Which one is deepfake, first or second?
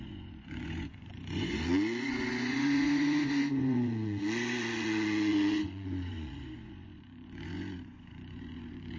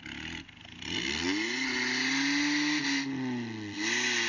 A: first